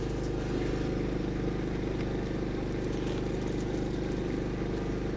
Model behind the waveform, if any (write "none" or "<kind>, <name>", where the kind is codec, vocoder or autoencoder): none